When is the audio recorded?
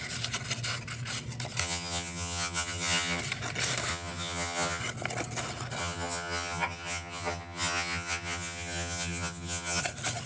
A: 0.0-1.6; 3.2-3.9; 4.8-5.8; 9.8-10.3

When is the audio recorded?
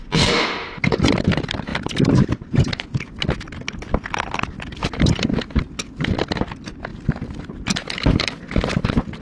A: 0.0-9.2